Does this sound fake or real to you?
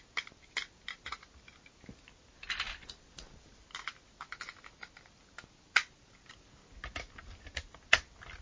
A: real